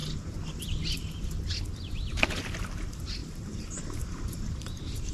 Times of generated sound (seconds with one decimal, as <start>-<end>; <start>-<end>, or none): 3.2-5.1